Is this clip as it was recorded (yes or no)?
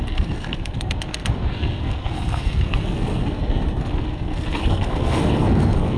no